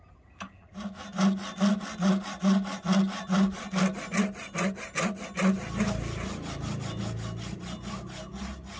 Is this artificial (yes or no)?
no